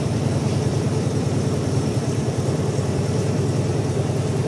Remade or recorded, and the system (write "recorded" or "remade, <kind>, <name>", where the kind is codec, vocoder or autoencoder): remade, vocoder, BigVGAN v2